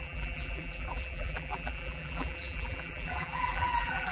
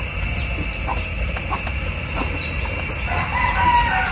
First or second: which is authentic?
second